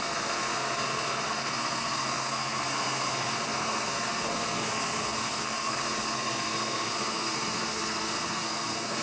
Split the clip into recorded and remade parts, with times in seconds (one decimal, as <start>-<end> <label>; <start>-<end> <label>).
0.0-9.0 remade